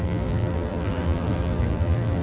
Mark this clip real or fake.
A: fake